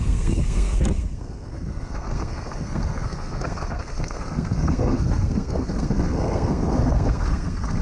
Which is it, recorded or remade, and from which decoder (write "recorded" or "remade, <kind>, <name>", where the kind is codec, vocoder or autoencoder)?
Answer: remade, codec, SNAC